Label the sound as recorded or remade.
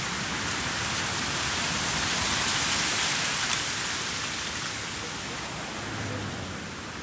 recorded